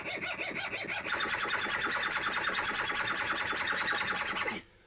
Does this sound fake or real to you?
real